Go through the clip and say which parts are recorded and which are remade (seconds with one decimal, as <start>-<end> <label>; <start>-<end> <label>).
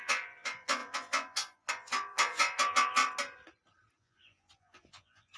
0.0-3.0 remade; 3.0-4.0 recorded; 4.0-5.4 remade